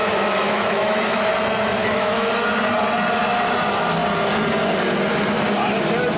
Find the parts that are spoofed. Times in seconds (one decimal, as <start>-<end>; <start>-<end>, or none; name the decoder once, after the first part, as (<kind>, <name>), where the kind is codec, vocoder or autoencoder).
0.0-1.3 (autoencoder, DAC-VAE); 1.8-2.6